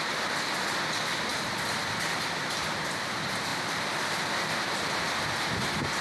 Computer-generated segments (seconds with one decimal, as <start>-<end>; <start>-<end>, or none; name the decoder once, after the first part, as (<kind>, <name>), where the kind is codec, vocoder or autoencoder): 3.5-4.8 (vocoder, BigVGAN v2)